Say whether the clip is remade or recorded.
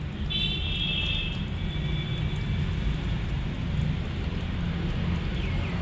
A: recorded